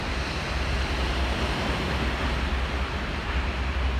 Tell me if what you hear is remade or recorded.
recorded